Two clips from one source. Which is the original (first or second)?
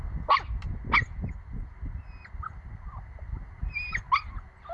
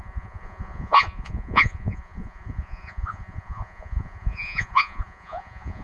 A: first